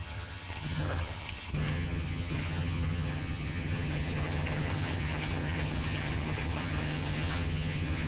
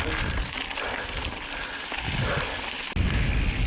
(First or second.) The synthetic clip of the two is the first